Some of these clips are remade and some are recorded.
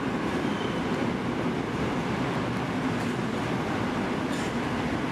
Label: remade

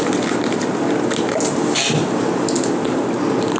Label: recorded